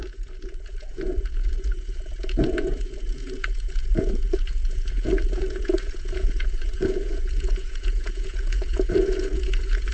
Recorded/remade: remade